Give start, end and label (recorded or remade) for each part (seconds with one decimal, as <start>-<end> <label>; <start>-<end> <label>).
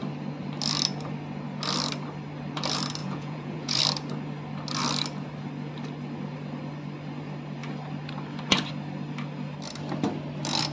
0.0-3.0 recorded; 3.0-3.8 remade; 3.8-10.7 recorded